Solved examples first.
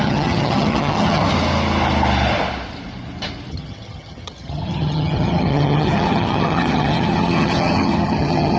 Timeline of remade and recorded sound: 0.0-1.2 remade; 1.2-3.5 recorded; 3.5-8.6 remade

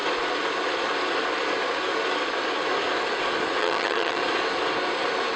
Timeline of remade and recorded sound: 0.0-3.6 recorded; 3.6-4.2 remade; 4.2-5.4 recorded